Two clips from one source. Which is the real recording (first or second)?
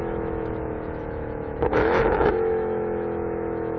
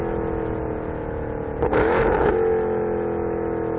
second